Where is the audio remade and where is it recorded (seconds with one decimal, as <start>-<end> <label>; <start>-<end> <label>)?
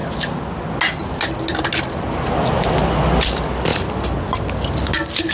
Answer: 0.0-5.3 recorded